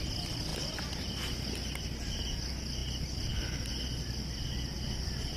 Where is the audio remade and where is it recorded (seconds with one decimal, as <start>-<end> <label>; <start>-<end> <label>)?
0.0-5.4 recorded